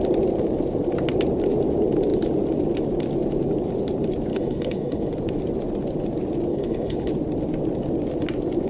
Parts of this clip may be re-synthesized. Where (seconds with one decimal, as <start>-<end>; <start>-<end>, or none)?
4.3-5.1; 6.5-7.1